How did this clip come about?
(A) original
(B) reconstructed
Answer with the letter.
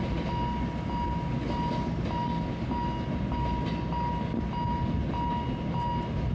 A